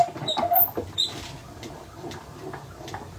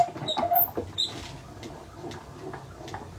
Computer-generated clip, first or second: first